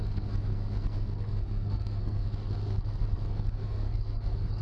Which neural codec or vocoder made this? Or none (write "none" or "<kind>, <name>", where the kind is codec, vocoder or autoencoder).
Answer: codec, SNAC